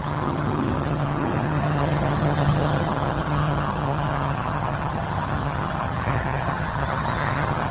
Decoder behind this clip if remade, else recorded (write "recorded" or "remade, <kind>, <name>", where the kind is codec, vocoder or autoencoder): remade, vocoder, HiFi-GAN